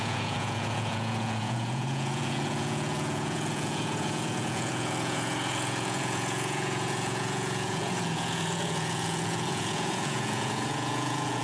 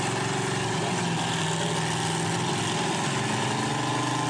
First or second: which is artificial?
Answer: first